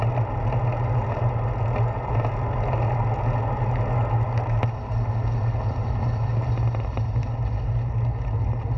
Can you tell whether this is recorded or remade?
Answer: recorded